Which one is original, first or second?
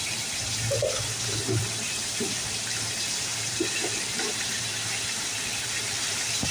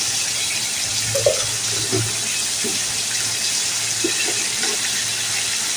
second